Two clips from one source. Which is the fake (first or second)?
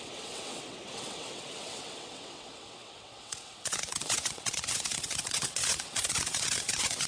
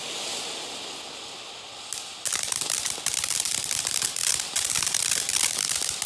first